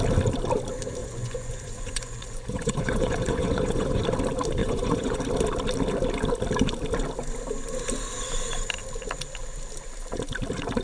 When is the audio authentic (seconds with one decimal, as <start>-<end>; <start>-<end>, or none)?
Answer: 0.0-1.0; 4.0-4.6; 5.2-10.8